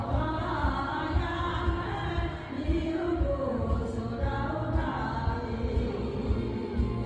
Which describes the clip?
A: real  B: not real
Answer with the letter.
A